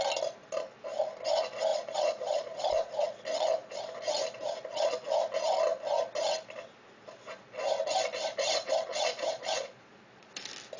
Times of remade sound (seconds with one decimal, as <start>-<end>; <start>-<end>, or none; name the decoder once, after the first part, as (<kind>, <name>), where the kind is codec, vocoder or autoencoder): 1.7-2.9 (vocoder, Vocos); 8.9-10.3